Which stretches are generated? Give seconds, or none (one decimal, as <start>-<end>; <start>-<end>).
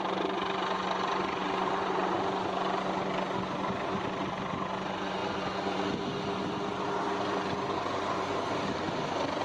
none